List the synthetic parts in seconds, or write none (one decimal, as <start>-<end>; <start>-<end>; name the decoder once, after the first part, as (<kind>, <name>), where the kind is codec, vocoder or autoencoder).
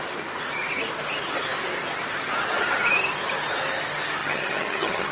4.2-5.1 (vocoder, HiFi-GAN)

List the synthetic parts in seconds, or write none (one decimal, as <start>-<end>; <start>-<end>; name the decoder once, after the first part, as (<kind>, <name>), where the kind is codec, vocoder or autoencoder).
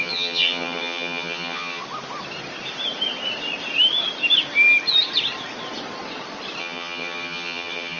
0.0-1.8 (vocoder, HiFi-GAN); 6.6-8.0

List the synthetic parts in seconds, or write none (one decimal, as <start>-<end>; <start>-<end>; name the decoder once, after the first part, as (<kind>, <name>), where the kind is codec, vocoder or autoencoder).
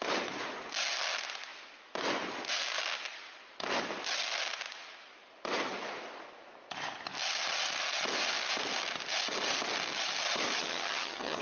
10.6-11.4 (vocoder, HiFi-GAN)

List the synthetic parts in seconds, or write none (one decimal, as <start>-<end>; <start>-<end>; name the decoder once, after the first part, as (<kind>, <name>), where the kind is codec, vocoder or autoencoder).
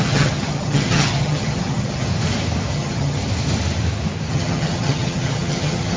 0.0-2.1 (vocoder, HiFi-GAN); 2.7-3.2; 4.3-6.0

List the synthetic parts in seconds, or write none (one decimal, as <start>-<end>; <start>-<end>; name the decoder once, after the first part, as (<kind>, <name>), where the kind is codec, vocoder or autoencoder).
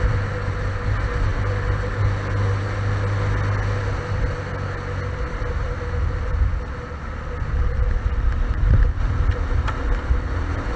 none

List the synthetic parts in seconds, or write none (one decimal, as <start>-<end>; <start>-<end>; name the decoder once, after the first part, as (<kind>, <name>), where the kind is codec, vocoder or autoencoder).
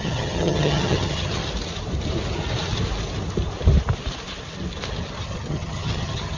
0.0-1.4 (vocoder, HiFi-GAN); 5.2-6.4